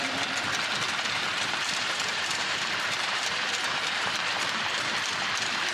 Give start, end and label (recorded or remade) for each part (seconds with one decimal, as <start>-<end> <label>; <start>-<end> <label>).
0.0-1.3 recorded; 1.3-4.7 remade; 4.7-5.7 recorded